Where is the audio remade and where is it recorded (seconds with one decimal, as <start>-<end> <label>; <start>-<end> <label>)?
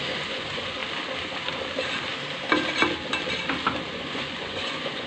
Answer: 0.0-0.8 remade; 0.8-3.9 recorded; 3.9-5.1 remade